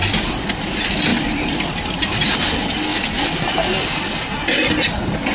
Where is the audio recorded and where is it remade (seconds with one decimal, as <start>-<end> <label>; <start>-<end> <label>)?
0.0-5.3 recorded

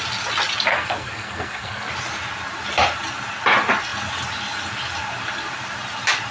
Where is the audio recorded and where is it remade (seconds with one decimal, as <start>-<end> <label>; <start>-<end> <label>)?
0.0-0.7 recorded; 0.7-1.9 remade; 1.9-6.3 recorded